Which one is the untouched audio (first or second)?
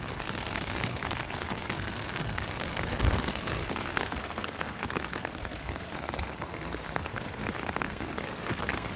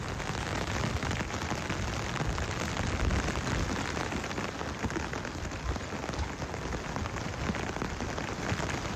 second